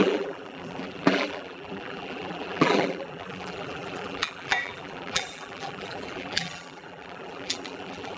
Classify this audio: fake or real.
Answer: fake